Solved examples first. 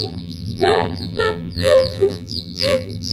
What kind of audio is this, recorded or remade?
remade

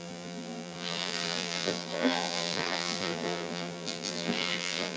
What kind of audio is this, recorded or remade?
remade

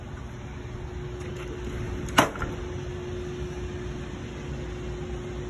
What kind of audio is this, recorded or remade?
recorded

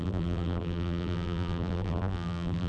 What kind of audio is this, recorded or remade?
remade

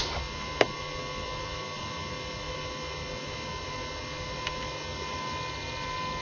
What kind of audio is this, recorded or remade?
recorded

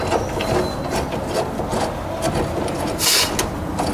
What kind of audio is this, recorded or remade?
recorded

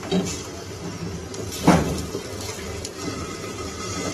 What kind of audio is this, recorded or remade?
remade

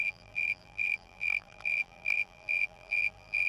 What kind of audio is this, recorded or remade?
remade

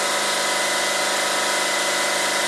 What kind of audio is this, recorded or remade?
recorded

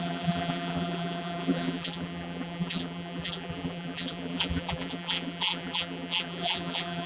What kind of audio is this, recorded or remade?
remade